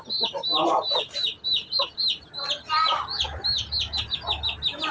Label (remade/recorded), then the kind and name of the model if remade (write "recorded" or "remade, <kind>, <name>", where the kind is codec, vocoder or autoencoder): recorded